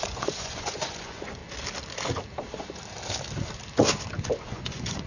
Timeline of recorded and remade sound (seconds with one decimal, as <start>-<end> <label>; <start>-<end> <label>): 0.0-1.4 remade; 1.4-4.4 recorded; 4.4-5.1 remade

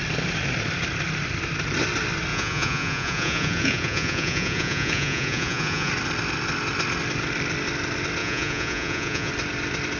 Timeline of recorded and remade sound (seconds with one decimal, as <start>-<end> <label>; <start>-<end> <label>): 0.0-2.3 recorded; 2.3-5.9 remade; 5.9-8.2 recorded; 8.2-9.3 remade; 9.3-10.0 recorded

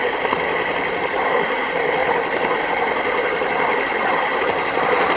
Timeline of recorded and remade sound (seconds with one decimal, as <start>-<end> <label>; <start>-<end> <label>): 0.0-5.2 recorded

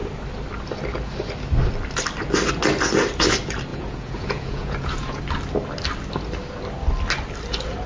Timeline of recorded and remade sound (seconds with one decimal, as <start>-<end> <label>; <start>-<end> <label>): 0.0-3.7 recorded; 3.7-5.2 remade; 5.2-7.9 recorded